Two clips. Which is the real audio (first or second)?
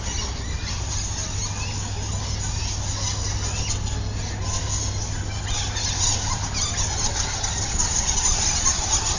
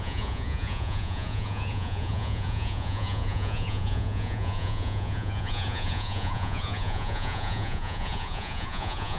first